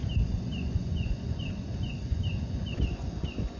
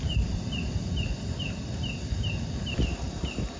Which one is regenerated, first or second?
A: first